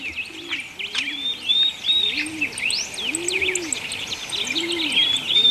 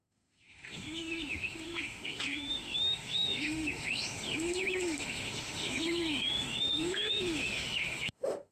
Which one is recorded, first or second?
first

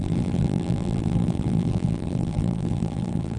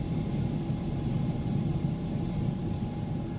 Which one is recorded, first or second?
second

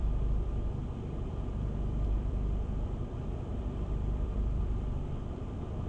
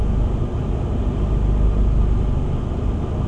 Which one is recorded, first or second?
second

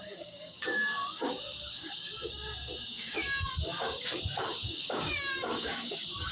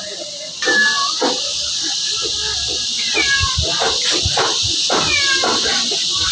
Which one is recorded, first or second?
second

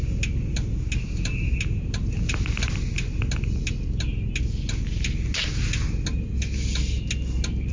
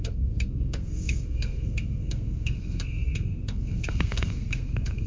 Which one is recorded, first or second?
first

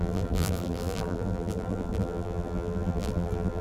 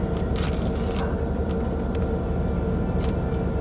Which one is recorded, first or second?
second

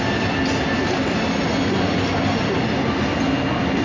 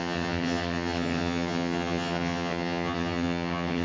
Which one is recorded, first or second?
first